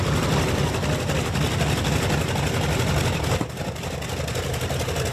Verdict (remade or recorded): recorded